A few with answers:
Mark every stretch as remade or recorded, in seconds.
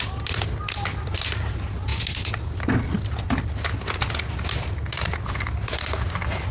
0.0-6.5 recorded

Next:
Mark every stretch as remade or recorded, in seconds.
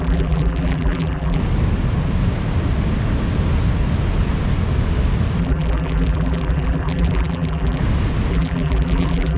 0.0-1.4 remade; 1.4-5.4 recorded; 5.4-7.8 remade; 7.8-8.3 recorded; 8.3-9.4 remade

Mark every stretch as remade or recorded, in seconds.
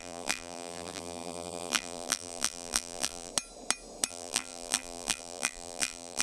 0.0-3.3 remade; 3.3-4.1 recorded; 4.1-6.2 remade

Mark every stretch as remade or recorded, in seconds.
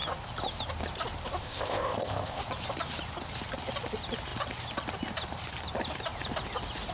0.0-1.4 recorded; 1.4-2.4 remade; 2.4-6.9 recorded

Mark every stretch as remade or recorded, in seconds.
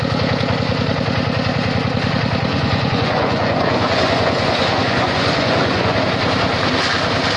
0.0-2.5 recorded; 2.5-6.0 remade; 6.0-7.4 recorded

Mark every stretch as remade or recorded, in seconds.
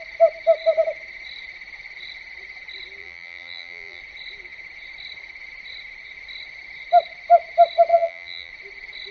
0.0-3.0 recorded; 3.0-4.0 remade; 4.0-7.9 recorded; 7.9-8.5 remade; 8.5-9.1 recorded